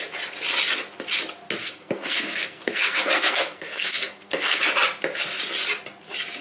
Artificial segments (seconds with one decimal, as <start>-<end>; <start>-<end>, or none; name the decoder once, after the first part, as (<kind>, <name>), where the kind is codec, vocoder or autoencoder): 1.6-4.6 (codec, SNAC)